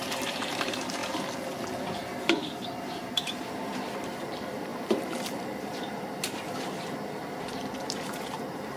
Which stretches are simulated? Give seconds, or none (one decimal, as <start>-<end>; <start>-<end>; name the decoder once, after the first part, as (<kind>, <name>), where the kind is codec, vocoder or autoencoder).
0.0-1.0 (vocoder, BigVGAN v2); 3.0-8.8

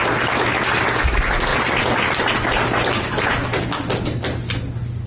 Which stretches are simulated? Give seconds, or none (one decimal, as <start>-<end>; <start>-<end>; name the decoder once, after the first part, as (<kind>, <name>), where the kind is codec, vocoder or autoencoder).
none

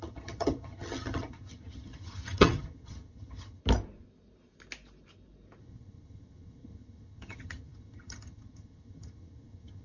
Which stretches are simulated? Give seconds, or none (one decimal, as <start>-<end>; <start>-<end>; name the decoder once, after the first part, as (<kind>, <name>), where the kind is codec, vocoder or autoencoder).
0.0-3.6 (vocoder, HiFi-GAN); 5.6-9.8

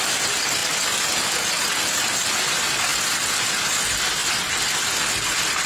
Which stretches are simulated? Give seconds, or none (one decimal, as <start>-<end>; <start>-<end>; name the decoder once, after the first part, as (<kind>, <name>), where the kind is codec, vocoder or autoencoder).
none

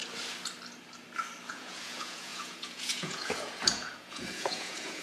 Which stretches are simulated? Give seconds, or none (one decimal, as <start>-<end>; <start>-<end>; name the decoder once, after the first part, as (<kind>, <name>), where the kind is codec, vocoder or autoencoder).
1.5-5.0 (vocoder, Vocos)

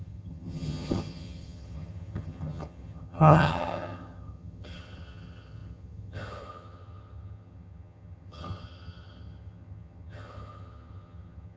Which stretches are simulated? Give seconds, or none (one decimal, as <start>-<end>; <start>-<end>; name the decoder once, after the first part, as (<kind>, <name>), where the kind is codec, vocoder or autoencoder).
0.0-11.6 (vocoder, HiFi-GAN)